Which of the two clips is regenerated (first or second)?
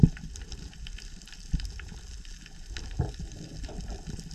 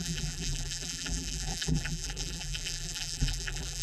second